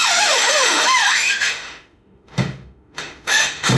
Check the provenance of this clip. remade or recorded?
remade